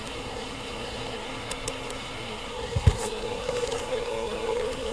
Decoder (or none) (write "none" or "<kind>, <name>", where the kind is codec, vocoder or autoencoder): codec, SNAC